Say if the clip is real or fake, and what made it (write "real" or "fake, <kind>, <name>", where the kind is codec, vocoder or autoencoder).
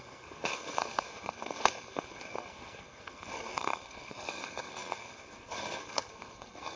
fake, codec, SNAC